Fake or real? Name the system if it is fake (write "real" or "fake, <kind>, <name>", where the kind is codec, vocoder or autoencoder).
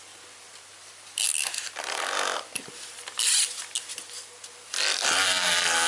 real